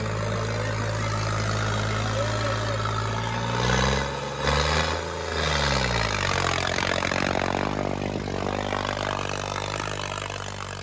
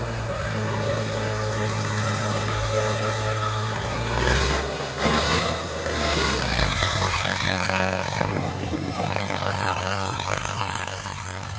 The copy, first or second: second